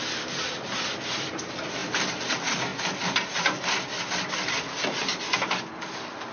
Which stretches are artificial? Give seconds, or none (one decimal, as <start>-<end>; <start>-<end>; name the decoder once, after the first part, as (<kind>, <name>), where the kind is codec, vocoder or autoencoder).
none